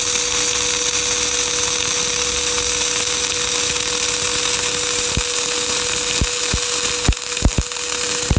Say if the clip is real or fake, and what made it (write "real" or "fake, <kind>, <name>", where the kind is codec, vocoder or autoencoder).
real